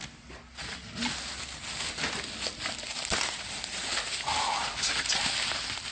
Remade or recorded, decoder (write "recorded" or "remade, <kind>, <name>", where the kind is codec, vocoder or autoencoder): recorded